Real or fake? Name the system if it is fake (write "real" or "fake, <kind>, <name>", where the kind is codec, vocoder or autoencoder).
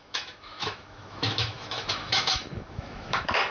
fake, autoencoder, DAC-VAE